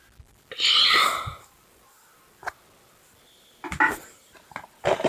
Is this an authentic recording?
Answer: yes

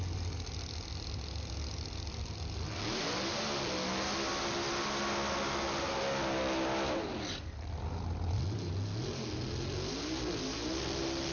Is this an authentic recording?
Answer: yes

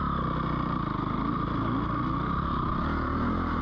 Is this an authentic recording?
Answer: yes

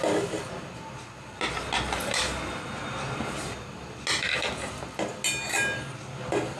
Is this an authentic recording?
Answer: yes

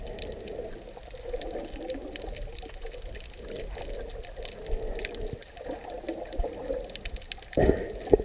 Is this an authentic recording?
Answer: yes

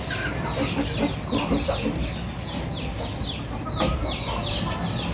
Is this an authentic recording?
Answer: yes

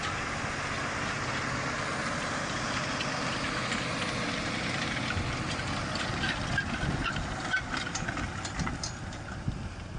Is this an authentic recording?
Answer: yes